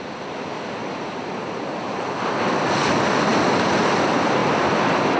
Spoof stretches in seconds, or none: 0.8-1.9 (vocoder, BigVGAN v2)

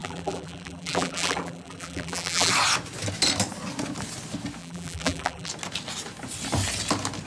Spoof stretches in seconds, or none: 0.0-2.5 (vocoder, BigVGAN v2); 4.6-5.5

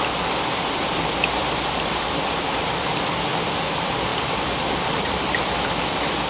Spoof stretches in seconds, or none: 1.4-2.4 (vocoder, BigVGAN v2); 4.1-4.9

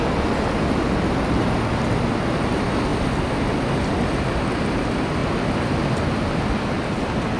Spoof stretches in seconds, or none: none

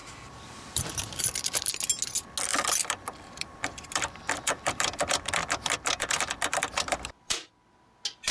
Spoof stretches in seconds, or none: 0.0-1.7 (vocoder, BigVGAN v2); 2.5-7.5

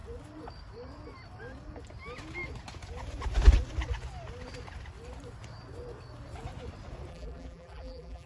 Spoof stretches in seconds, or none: 7.1-8.3 (vocoder, BigVGAN v2)